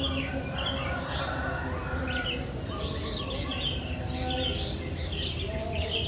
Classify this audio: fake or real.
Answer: real